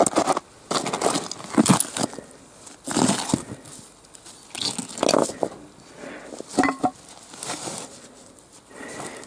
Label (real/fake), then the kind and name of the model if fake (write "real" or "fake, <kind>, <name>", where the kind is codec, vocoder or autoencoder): real